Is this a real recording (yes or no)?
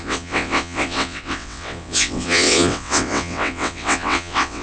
no